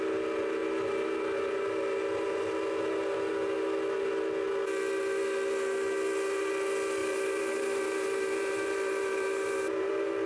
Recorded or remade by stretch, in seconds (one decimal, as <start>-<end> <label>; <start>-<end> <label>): 0.0-7.0 recorded; 7.0-9.9 remade; 9.9-10.3 recorded